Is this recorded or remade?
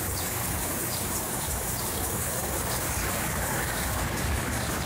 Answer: remade